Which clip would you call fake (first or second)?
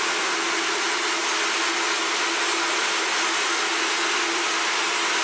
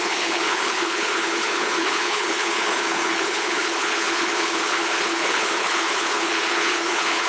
second